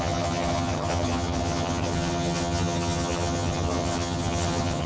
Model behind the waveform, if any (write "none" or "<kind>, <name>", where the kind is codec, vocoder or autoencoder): vocoder, HiFi-GAN